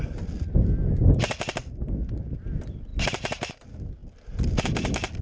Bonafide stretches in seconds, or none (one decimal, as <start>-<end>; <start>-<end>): 0.0-4.0; 4.6-5.2